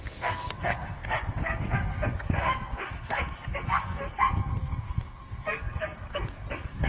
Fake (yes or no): yes